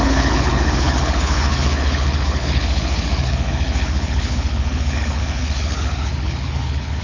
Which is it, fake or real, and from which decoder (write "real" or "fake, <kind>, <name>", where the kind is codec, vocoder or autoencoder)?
fake, codec, HILCodec